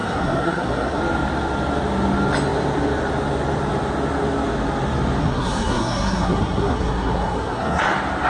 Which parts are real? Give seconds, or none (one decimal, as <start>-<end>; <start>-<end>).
1.0-5.2; 7.8-8.3